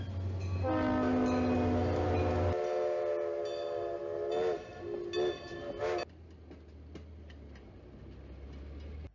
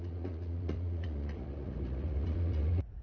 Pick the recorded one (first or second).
first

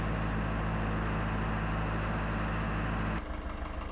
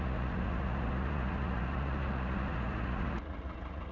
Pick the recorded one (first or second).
first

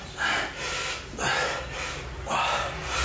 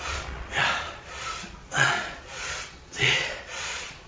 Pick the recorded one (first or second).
first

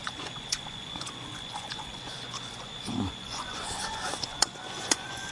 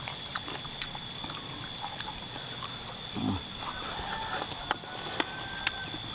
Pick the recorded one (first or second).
second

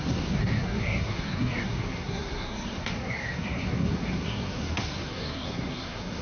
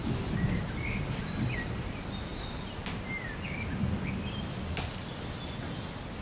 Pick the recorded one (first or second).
second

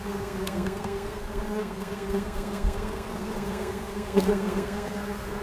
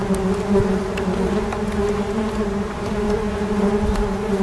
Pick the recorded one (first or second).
second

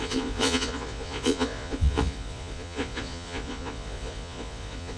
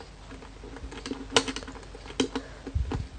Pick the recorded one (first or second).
second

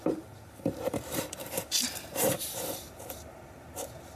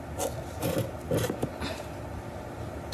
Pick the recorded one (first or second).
second